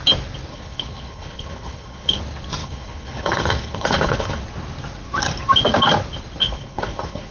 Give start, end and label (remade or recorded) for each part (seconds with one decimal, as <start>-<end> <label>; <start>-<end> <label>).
0.0-0.5 recorded; 0.5-2.2 remade; 2.2-2.6 recorded; 2.6-4.4 remade; 4.4-6.4 recorded; 6.4-7.3 remade